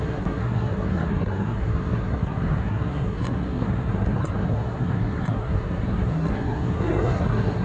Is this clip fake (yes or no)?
yes